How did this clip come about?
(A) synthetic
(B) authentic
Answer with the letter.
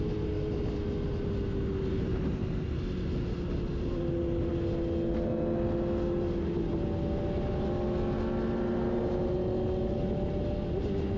B